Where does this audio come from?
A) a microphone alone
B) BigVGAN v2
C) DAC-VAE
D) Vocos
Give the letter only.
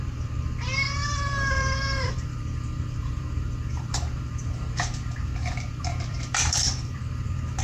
B